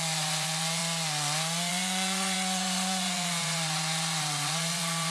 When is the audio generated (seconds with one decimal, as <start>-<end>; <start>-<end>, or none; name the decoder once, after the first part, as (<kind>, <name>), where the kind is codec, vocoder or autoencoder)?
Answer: 0.0-0.8 (vocoder, Vocos); 1.7-5.1